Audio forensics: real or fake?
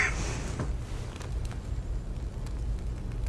real